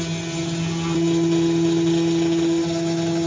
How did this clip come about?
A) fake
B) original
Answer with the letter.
B